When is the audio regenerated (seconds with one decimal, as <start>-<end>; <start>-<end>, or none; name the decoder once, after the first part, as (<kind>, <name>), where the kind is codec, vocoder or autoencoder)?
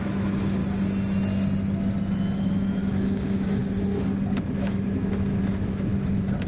0.0-0.6 (autoencoder, DAC-VAE); 2.4-3.6; 4.5-5.9